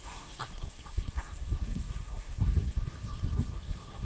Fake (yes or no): yes